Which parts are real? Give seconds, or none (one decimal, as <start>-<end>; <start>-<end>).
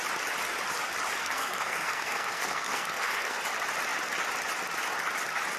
0.0-1.2; 3.4-5.6